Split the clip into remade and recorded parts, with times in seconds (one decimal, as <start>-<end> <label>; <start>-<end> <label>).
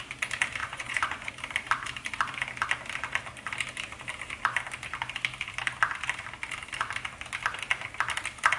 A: 0.0-0.6 recorded; 0.6-1.3 remade; 1.3-8.6 recorded